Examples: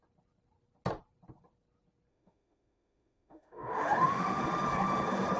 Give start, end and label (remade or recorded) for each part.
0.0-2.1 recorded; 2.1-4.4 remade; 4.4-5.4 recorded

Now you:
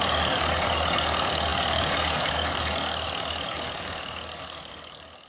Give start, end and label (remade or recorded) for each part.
0.0-5.3 remade

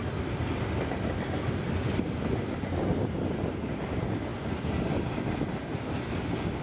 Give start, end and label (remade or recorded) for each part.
0.0-6.6 recorded

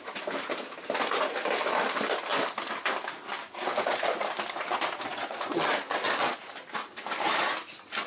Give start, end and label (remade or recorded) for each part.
0.0-5.1 recorded; 5.1-6.4 remade; 6.4-8.1 recorded

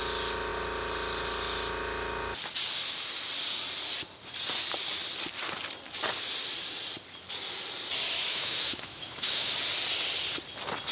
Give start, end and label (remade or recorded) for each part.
0.0-8.3 recorded; 8.3-9.5 remade; 9.5-10.9 recorded

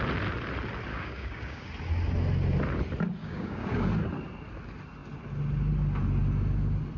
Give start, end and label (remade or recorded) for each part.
0.0-0.9 recorded; 0.9-1.7 remade; 1.7-3.2 recorded; 3.2-3.9 remade; 3.9-7.0 recorded

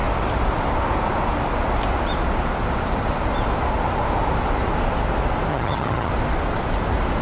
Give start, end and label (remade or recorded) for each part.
0.0-5.5 recorded; 5.5-6.1 remade; 6.1-7.2 recorded